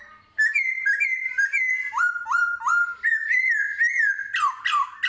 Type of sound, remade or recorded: recorded